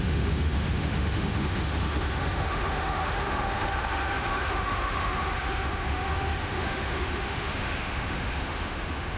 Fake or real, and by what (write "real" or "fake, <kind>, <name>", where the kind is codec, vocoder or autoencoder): fake, autoencoder, DAC-VAE